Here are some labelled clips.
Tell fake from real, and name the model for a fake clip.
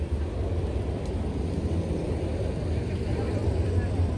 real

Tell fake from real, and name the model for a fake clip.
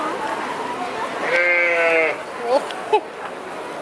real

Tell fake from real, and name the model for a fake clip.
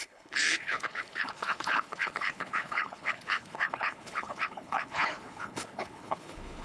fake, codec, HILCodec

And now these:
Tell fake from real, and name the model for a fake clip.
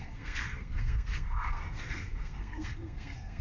fake, codec, SNAC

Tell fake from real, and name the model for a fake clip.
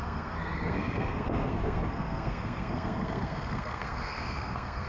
fake, codec, SNAC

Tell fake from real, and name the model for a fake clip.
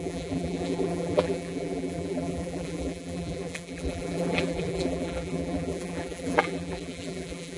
fake, vocoder, BigVGAN v2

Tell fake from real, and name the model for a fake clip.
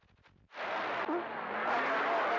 real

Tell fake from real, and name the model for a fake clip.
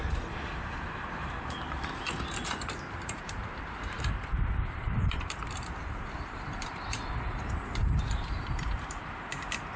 fake, vocoder, BigVGAN v2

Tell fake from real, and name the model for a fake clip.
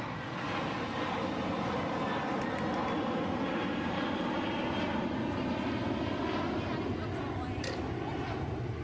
real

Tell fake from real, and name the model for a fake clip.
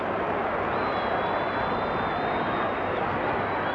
real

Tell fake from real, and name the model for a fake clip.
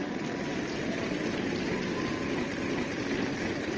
real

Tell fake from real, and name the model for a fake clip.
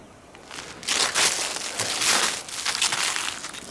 real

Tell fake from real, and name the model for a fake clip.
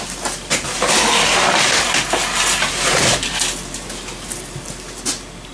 real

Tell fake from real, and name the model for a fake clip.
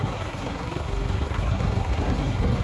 fake, codec, SNAC